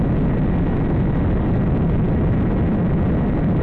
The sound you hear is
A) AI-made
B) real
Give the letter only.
B